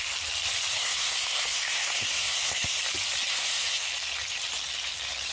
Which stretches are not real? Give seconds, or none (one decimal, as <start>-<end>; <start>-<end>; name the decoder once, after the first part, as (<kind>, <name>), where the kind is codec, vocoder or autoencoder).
0.7-2.8 (codec, SNAC); 3.3-3.9